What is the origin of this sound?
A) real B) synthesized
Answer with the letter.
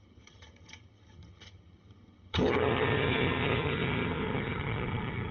B